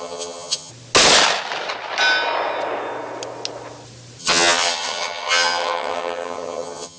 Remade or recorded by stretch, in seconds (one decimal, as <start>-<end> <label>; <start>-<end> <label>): 0.0-0.7 remade; 0.7-4.2 recorded; 4.2-7.0 remade